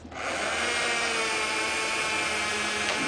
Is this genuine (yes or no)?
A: yes